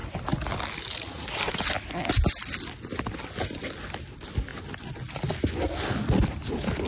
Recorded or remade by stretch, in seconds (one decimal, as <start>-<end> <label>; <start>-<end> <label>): 0.0-6.9 recorded